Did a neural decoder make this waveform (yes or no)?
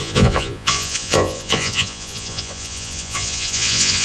yes